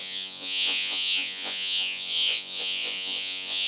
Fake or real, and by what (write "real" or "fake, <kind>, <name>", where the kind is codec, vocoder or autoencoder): fake, vocoder, Vocos